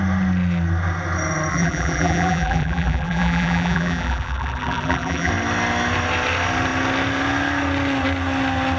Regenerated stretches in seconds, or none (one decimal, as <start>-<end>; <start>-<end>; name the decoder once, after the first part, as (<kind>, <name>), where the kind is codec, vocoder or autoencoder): 1.5-5.3 (vocoder, BigVGAN v2)